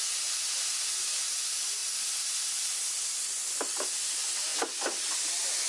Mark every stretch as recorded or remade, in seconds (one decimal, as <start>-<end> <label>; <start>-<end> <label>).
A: 0.0-5.7 recorded